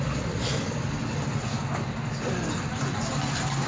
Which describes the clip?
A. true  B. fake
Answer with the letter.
A